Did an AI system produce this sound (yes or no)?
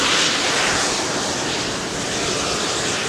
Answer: no